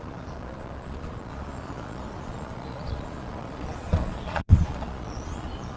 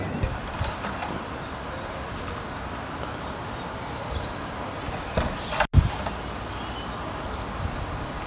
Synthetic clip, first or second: first